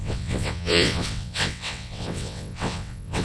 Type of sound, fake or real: fake